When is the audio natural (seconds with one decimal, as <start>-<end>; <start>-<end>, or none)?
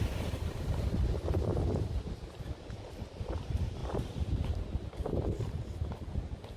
none